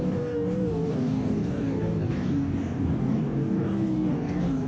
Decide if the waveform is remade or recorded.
remade